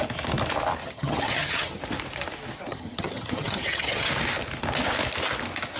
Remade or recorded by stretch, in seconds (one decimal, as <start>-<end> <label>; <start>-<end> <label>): 0.0-0.8 recorded; 0.8-1.8 remade; 1.8-2.7 recorded; 2.7-4.1 remade; 4.1-5.8 recorded